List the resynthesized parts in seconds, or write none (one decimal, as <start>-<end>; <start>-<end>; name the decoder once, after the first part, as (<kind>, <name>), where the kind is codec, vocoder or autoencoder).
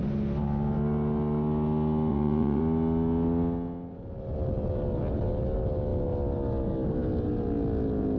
2.1-2.6 (vocoder, Vocos)